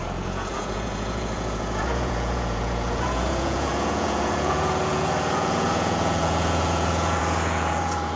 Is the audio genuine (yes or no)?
no